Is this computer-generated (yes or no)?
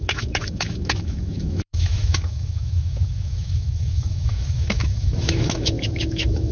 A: yes